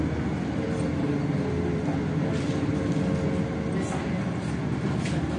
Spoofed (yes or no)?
no